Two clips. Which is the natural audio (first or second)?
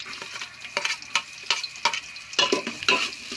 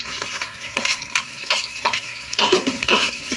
first